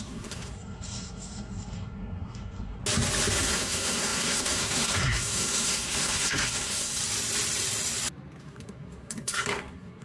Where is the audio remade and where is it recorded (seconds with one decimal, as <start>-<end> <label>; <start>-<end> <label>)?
0.0-2.8 remade; 2.8-3.3 recorded; 3.3-7.0 remade; 7.0-8.4 recorded; 8.4-10.0 remade